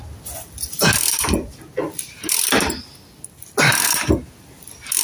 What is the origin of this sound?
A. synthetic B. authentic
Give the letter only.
B